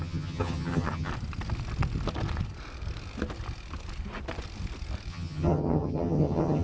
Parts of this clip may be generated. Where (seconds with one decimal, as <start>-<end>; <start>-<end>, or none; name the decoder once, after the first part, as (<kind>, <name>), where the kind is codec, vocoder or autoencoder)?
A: 0.0-1.1 (vocoder, HiFi-GAN); 5.1-6.6